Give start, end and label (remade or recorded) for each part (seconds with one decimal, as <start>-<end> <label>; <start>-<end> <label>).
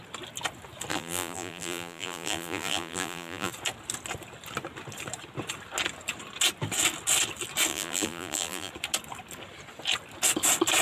0.0-0.9 recorded; 0.9-3.5 remade; 3.5-7.7 recorded; 7.7-8.7 remade; 8.7-10.8 recorded